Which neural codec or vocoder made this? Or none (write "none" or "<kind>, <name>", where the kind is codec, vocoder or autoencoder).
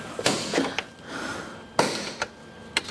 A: none